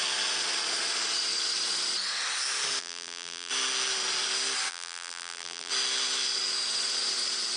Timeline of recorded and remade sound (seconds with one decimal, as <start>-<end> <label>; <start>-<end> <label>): 0.0-2.8 recorded; 2.8-3.5 remade; 3.5-4.7 recorded; 4.7-5.7 remade; 5.7-7.6 recorded